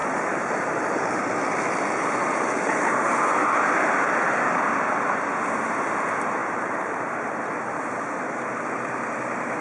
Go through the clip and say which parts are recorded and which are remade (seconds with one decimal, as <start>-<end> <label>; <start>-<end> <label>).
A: 0.0-1.2 remade; 1.2-6.4 recorded; 6.4-7.4 remade; 7.4-9.6 recorded